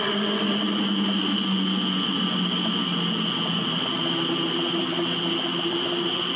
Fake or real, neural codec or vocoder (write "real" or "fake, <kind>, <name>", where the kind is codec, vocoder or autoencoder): real